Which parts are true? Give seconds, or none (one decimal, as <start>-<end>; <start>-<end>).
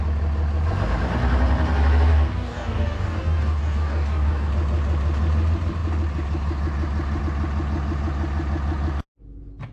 0.0-2.1; 4.5-9.7